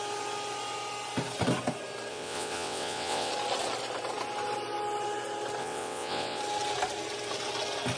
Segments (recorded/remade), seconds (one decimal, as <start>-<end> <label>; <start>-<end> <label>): 0.0-2.1 recorded; 2.1-3.3 remade; 3.3-5.6 recorded; 5.6-6.4 remade; 6.4-8.0 recorded